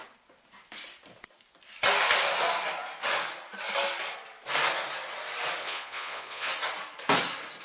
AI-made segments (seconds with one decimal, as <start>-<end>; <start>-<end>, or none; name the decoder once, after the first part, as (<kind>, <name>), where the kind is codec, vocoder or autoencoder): 5.6-6.5 (vocoder, Vocos)